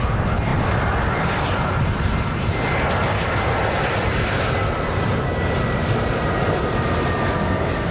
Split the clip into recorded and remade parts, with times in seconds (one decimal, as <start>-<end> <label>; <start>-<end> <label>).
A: 0.0-7.9 recorded